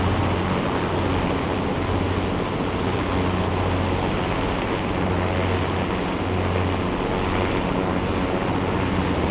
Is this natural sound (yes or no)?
yes